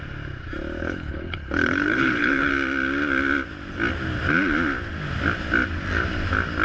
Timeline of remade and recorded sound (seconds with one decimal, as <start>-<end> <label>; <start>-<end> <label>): 0.0-0.8 recorded; 0.8-2.5 remade; 2.5-6.6 recorded